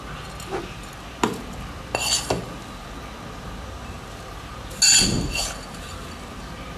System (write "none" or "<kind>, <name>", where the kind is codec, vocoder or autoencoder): none